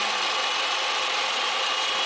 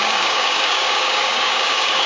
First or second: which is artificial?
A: second